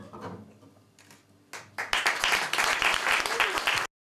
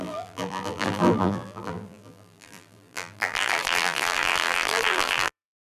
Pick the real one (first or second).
first